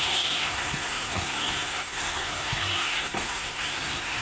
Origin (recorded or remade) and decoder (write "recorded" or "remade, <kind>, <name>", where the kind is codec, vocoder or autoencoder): remade, codec, SNAC